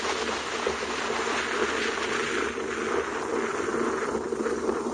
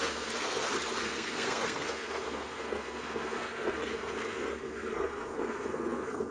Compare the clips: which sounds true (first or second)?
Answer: first